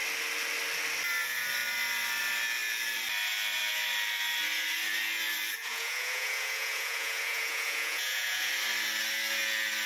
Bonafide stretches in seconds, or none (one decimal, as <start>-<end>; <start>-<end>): 0.0-5.6; 8.5-9.9